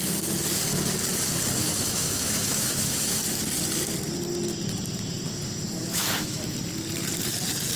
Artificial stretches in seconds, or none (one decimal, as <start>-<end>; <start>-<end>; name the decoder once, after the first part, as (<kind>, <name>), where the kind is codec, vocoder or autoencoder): 1.6-3.2 (autoencoder, DAC-VAE); 5.8-6.4